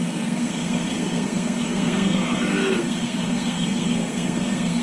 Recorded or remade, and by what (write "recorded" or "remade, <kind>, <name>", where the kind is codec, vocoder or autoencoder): remade, codec, SNAC